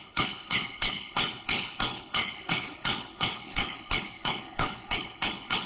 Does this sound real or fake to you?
fake